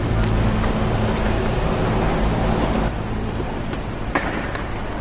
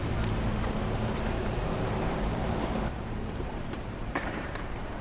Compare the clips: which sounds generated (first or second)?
second